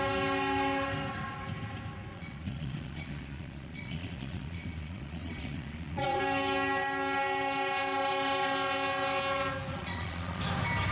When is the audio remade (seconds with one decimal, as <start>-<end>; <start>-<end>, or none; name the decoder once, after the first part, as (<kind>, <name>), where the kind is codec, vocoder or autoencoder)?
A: 2.1-6.2 (vocoder, Vocos); 9.7-10.4